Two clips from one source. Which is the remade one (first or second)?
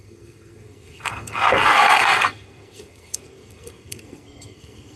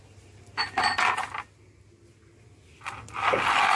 first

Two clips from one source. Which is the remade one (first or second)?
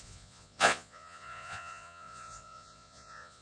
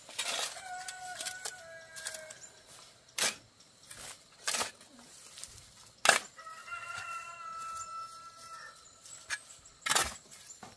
first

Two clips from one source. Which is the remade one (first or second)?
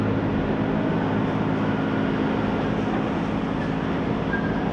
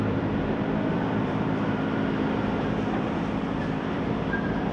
second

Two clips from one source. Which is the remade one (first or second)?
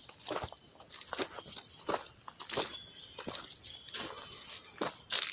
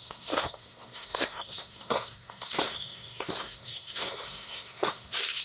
second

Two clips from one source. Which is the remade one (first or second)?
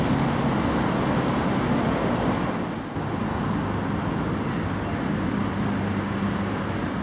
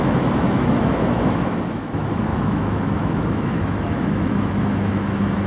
second